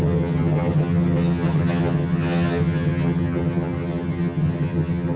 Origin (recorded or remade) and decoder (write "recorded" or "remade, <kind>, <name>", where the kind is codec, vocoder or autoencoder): remade, vocoder, HiFi-GAN